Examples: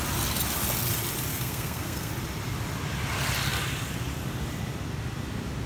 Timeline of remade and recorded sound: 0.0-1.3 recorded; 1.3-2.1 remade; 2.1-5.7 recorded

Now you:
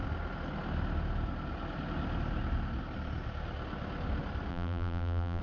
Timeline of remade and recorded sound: 0.0-4.5 recorded; 4.5-5.4 remade